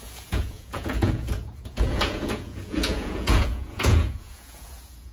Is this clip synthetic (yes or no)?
yes